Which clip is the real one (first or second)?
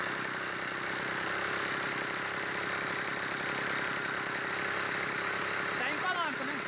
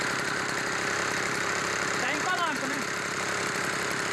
first